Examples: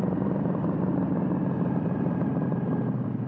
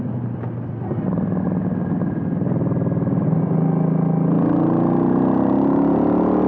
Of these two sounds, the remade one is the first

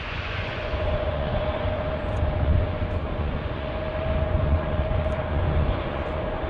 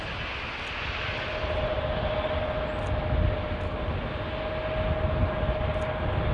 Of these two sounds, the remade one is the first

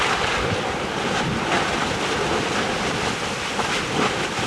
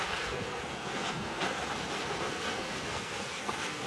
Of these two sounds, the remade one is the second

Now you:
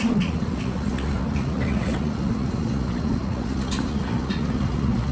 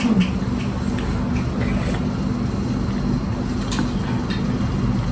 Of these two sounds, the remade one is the first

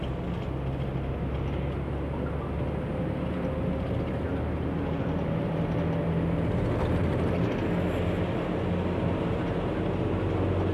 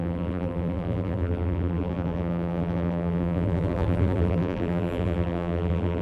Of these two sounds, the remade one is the second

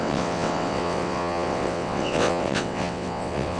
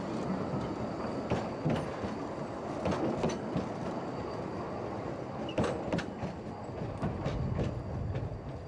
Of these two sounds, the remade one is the first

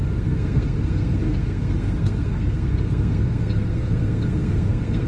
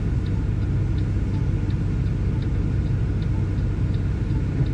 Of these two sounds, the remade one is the first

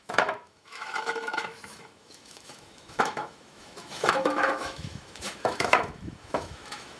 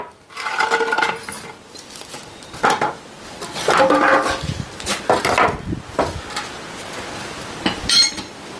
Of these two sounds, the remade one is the first